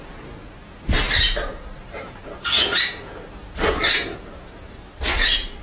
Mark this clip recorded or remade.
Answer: recorded